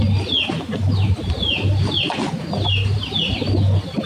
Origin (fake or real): real